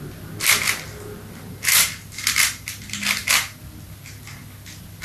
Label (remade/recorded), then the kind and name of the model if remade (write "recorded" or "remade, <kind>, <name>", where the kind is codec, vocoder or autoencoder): recorded